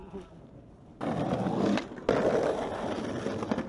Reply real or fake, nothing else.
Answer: real